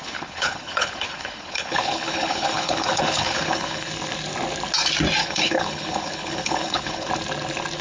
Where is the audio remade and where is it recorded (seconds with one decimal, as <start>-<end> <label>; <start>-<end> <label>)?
0.0-3.9 remade; 3.9-5.2 recorded; 5.2-7.1 remade; 7.1-7.8 recorded